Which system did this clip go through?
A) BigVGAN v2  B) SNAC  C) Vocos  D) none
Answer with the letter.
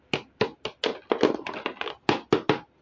D